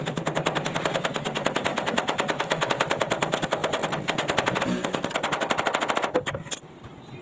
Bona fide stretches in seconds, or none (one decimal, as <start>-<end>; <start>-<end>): 0.0-1.7; 2.7-7.2